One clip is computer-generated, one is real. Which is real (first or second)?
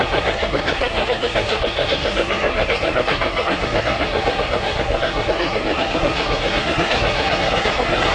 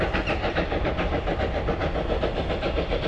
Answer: second